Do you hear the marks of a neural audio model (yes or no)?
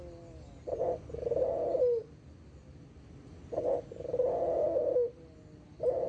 no